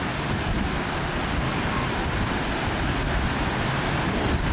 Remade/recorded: recorded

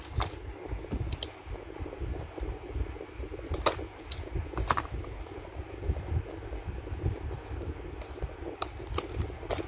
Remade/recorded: recorded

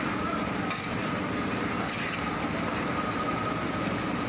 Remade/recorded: recorded